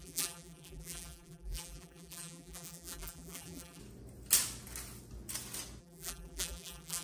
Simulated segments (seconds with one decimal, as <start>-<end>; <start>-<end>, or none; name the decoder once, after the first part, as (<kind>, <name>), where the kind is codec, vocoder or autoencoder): 0.0-3.8 (vocoder, BigVGAN v2); 5.8-7.0